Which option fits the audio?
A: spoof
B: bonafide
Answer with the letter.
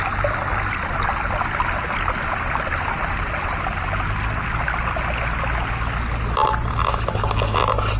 B